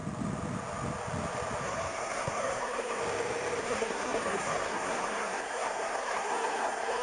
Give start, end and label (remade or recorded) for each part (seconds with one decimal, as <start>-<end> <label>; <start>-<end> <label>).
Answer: 0.0-1.6 recorded; 1.6-3.0 remade; 3.0-3.6 recorded; 3.6-7.0 remade